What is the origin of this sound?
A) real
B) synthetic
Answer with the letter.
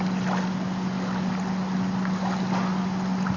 A